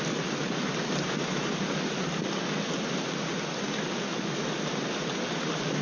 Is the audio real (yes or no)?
yes